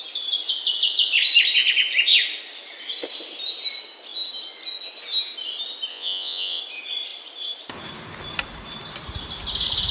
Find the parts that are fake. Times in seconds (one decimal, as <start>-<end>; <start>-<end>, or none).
5.9-6.6